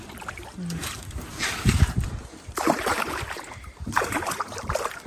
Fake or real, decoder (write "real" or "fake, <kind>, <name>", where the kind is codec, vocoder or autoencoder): fake, vocoder, BigVGAN v2